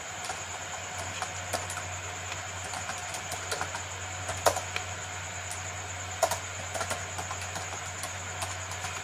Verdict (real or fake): real